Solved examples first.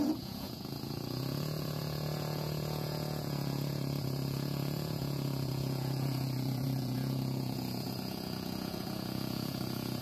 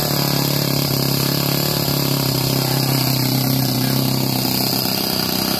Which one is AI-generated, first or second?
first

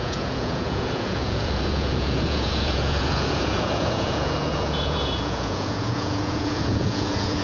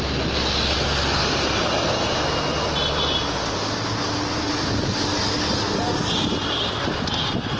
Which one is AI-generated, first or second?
first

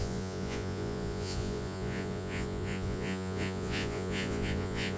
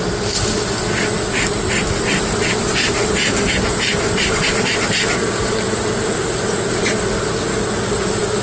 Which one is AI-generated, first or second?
first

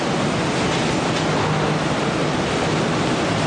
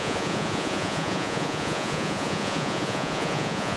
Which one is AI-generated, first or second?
second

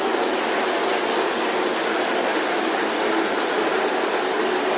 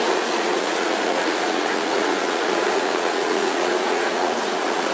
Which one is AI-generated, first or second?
second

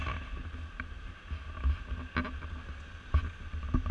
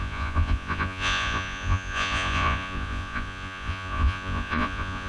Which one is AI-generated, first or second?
second